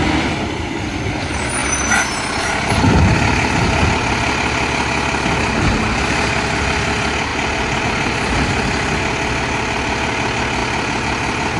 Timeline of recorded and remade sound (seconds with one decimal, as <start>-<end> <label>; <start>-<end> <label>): 0.0-11.6 recorded